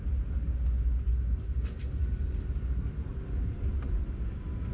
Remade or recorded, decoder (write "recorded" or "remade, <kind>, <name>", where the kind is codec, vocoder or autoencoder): recorded